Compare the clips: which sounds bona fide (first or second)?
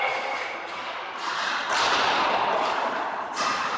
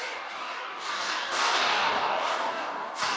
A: first